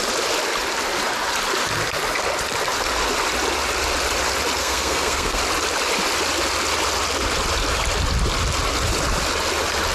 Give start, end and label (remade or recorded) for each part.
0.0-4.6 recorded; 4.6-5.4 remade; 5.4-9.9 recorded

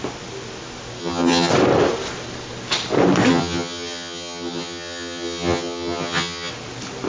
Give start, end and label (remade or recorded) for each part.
0.0-1.0 recorded; 1.0-1.5 remade; 1.5-3.3 recorded; 3.3-6.5 remade; 6.5-7.1 recorded